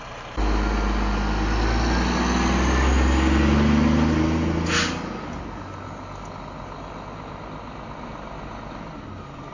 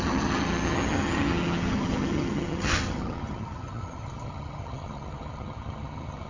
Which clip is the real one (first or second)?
first